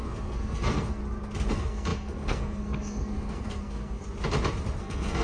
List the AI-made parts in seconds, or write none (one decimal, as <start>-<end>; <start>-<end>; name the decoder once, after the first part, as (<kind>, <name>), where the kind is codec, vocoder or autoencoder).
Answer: 0.0-1.0 (codec, SNAC); 1.5-4.0; 4.8-5.2